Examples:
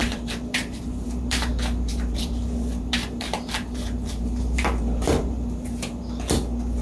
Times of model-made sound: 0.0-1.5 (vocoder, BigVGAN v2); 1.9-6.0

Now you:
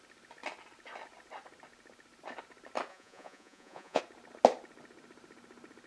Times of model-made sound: 2.9-4.0 (vocoder, Vocos)